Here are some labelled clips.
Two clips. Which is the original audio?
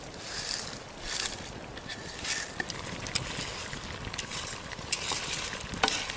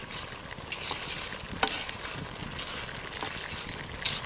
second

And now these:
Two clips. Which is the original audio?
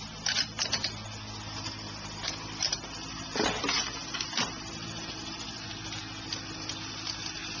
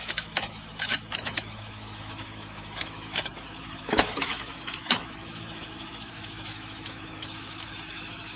first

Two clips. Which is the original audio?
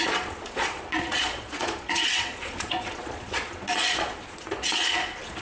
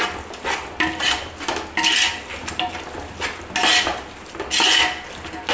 second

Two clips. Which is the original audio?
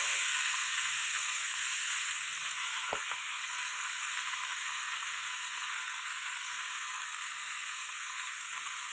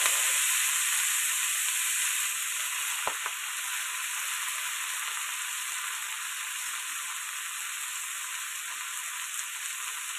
second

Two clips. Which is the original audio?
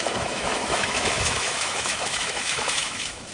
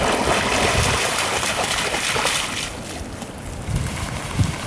second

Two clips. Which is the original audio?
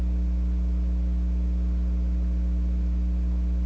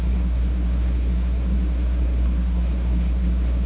first